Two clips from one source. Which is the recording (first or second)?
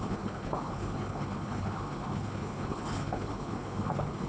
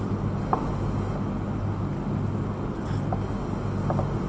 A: second